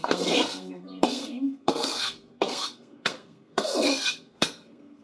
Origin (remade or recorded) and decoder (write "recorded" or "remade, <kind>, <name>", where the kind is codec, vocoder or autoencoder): remade, codec, SNAC